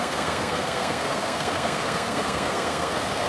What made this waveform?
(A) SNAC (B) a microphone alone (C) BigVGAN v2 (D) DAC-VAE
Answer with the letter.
A